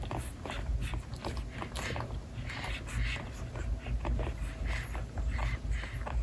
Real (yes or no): yes